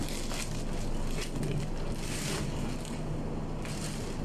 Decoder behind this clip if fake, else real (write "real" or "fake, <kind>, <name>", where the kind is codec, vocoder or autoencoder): real